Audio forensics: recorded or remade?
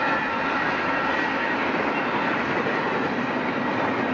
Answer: recorded